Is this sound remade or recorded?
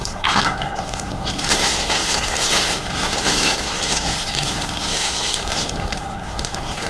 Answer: remade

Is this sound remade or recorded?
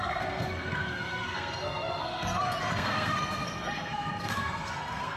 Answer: remade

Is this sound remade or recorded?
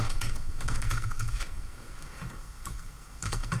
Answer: remade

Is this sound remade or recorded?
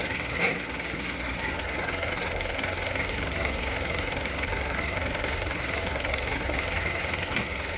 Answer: remade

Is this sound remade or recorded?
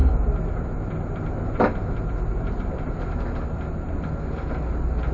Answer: recorded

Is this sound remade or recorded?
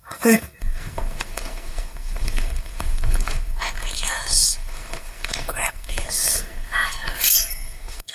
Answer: remade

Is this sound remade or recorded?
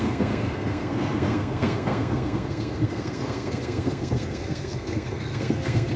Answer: remade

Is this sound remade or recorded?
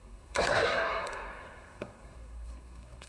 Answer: remade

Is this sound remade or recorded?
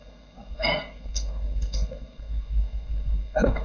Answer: remade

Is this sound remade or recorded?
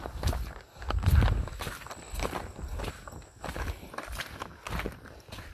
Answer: recorded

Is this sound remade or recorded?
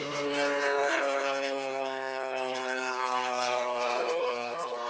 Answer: remade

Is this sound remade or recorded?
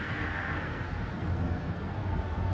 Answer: remade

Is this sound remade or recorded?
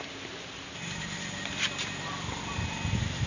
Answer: recorded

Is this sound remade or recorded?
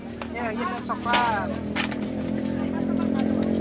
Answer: recorded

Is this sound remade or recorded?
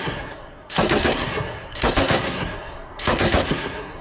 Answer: remade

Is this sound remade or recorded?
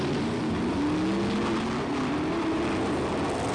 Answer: recorded